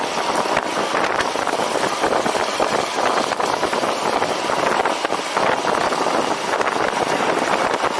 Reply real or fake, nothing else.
real